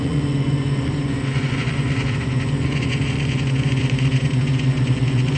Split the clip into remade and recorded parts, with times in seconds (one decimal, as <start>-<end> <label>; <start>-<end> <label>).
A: 0.0-5.4 remade